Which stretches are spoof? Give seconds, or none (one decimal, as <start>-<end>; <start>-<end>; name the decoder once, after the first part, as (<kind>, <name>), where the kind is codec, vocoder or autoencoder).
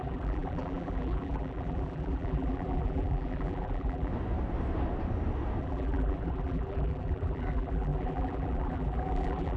0.0-4.1 (vocoder, BigVGAN v2); 5.6-9.6